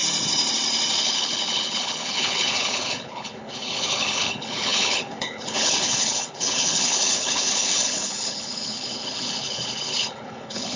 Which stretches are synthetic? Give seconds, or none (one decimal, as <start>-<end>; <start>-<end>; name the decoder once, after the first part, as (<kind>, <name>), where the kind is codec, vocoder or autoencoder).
1.0-10.8 (codec, HILCodec)